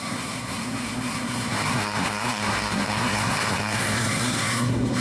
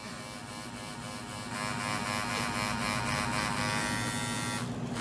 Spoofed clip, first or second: first